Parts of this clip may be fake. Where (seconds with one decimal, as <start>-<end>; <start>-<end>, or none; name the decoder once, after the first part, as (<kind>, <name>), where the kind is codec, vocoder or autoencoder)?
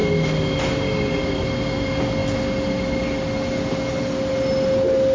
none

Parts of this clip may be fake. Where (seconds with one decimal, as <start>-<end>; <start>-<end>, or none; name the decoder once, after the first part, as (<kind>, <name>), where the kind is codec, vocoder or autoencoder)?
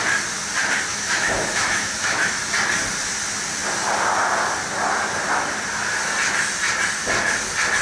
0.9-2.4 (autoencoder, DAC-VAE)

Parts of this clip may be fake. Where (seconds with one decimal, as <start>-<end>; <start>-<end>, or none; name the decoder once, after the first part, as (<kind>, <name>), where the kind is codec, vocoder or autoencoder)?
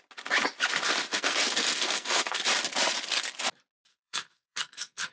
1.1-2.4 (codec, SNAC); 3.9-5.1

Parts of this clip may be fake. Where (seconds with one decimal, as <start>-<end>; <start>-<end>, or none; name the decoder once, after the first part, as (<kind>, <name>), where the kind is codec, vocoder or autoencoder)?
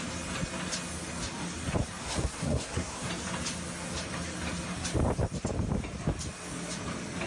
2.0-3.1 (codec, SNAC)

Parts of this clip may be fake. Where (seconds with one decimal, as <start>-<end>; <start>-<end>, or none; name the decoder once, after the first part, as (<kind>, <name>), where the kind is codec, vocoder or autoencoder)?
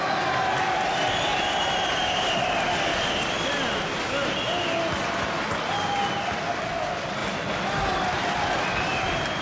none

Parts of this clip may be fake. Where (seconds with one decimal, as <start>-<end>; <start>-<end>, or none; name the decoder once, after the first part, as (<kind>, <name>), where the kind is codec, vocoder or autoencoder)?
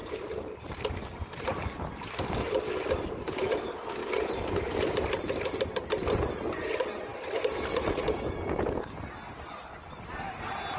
none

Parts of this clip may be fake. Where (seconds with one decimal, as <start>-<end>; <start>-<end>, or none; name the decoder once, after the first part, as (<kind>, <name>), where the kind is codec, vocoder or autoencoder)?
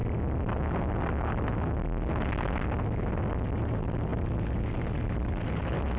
3.6-6.0 (vocoder, BigVGAN v2)